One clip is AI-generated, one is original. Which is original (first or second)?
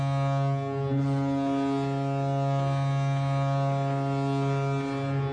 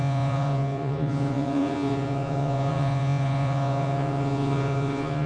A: first